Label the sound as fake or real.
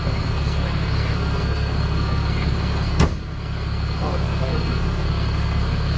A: fake